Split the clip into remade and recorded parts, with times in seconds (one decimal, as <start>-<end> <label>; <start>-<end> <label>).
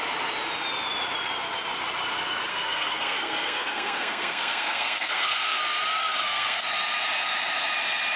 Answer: 0.0-2.5 recorded; 2.5-5.6 remade; 5.6-6.0 recorded; 6.0-6.6 remade; 6.6-8.2 recorded